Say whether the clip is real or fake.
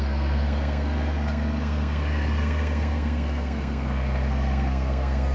fake